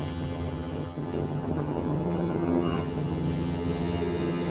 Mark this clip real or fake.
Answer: fake